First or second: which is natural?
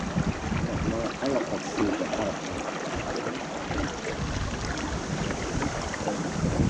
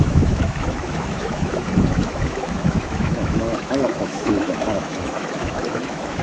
first